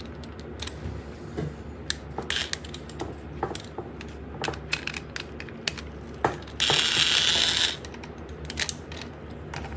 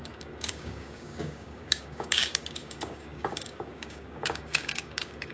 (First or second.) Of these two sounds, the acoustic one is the first